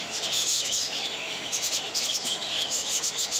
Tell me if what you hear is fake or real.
fake